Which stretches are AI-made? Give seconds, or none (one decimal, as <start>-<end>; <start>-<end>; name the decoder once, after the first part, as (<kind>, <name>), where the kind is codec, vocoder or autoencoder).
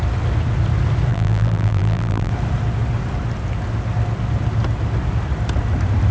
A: 1.1-2.3 (vocoder, BigVGAN v2)